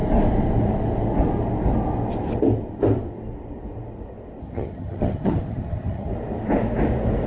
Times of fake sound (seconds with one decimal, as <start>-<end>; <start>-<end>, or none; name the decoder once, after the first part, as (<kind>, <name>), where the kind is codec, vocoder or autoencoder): 4.4-6.1 (vocoder, HiFi-GAN)